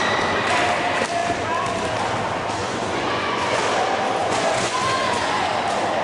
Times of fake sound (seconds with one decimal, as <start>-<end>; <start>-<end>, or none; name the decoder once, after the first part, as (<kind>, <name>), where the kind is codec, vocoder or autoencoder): 2.6-3.6 (vocoder, Vocos); 4.2-5.5